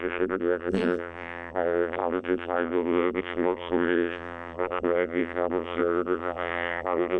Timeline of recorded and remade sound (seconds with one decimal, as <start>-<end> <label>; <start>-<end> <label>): 0.0-7.2 remade